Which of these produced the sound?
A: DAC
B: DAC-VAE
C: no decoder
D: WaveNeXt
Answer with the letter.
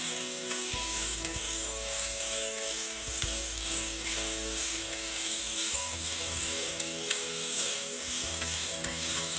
A